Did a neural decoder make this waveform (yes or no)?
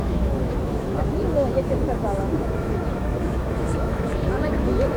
yes